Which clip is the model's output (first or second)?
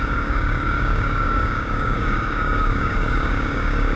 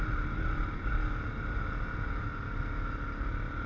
first